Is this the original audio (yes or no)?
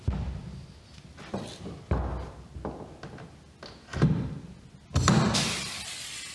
yes